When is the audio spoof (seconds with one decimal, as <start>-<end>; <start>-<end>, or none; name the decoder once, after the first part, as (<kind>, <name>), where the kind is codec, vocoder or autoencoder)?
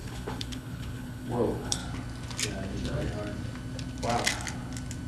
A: 0.0-1.8 (codec, HILCodec)